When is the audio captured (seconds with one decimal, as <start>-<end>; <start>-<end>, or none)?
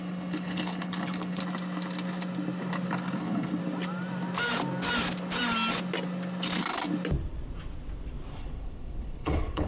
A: 1.4-3.2; 3.6-8.3